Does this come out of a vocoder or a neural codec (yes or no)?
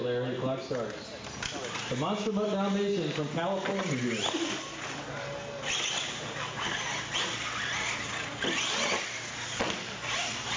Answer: no